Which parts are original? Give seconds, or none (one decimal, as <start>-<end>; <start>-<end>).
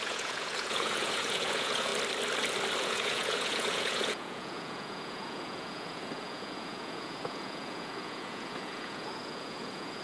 1.9-2.8